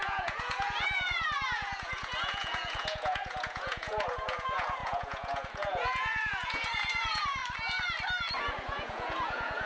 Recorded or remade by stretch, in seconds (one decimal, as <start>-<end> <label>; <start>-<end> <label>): 0.0-7.4 remade; 7.4-8.4 recorded; 8.4-9.7 remade